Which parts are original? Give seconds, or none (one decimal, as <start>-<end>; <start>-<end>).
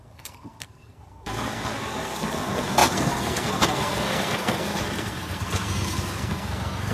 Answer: none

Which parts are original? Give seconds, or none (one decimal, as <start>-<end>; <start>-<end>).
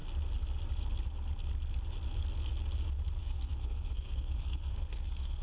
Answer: 0.0-3.2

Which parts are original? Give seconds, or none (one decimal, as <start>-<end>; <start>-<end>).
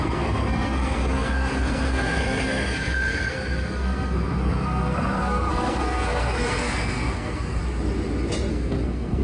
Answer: 7.6-8.5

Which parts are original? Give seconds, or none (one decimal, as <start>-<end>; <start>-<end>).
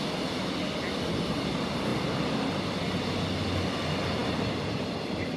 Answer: 0.0-5.4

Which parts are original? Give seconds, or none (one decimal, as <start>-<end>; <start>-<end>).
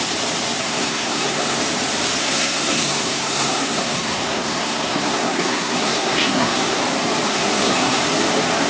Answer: 0.0-0.6; 1.6-2.2; 6.8-7.3; 8.0-8.7